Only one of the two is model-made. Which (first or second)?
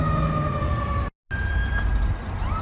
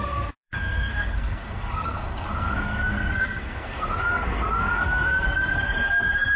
second